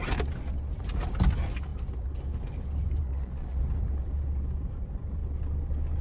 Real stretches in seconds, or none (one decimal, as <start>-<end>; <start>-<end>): 0.0-3.0; 3.6-6.0